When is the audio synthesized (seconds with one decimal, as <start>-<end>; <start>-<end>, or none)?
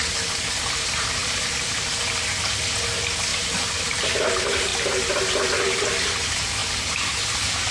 none